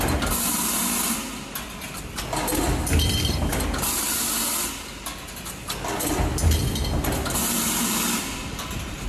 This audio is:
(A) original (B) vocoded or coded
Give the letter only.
A